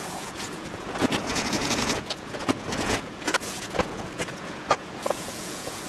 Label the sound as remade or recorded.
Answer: remade